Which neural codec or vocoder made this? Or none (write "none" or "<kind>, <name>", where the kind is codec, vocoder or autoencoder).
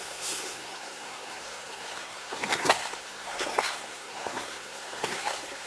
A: codec, SNAC